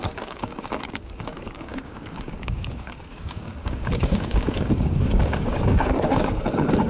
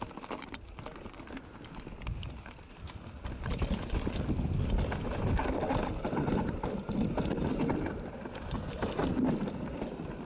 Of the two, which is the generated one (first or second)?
first